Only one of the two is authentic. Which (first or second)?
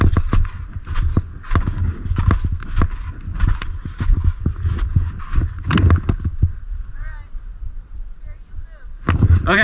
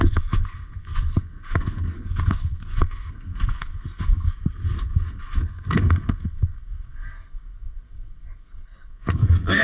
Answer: first